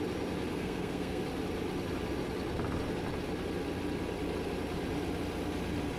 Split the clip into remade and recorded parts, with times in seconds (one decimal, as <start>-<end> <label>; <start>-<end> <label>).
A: 0.0-0.5 recorded; 0.5-1.2 remade; 1.2-6.0 recorded